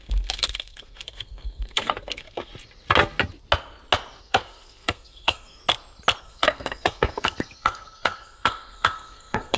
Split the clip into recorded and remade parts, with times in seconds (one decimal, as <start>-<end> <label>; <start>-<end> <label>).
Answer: 0.0-2.5 remade; 2.5-4.2 recorded; 4.2-5.6 remade; 5.6-6.2 recorded; 6.2-9.6 remade